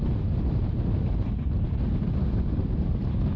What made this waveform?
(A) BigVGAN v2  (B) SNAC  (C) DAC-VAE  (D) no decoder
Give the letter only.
D